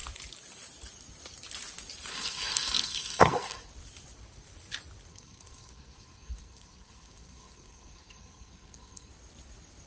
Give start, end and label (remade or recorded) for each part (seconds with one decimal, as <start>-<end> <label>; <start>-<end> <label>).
0.0-2.1 recorded; 2.1-3.7 remade; 3.7-5.1 recorded; 5.1-9.1 remade; 9.1-9.9 recorded